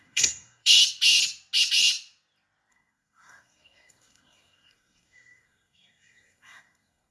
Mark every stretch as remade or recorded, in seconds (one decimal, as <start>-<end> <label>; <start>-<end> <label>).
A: 0.0-0.8 remade; 0.8-2.7 recorded; 2.7-7.1 remade